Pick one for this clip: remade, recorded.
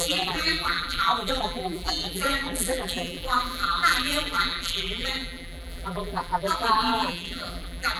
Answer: remade